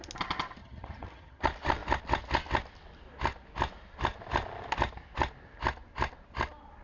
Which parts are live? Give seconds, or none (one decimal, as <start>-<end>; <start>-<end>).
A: 0.0-0.6; 1.4-6.8